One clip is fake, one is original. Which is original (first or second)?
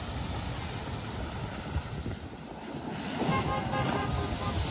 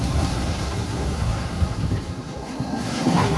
first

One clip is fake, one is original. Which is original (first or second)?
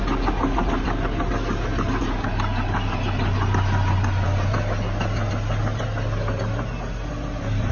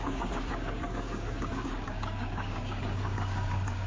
first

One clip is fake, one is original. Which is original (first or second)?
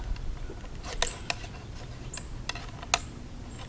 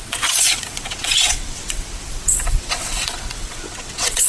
first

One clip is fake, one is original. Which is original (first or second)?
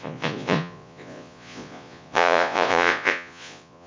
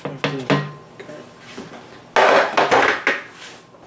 second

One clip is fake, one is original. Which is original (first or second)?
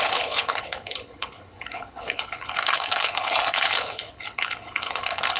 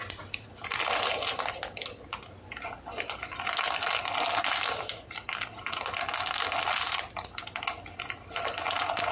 second